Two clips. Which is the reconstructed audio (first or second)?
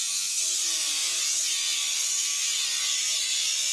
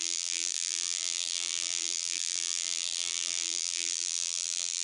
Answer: second